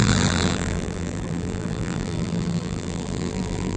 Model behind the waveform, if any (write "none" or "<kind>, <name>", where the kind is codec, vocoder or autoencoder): vocoder, BigVGAN v2